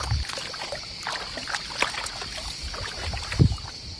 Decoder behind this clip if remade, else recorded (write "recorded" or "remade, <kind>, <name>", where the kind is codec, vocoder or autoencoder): recorded